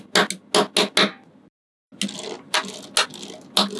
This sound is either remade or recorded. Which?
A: recorded